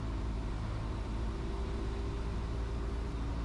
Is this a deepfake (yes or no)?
no